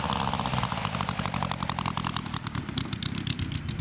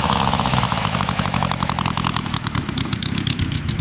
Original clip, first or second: first